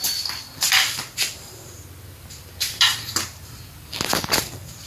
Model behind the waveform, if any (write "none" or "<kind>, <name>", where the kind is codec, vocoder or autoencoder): none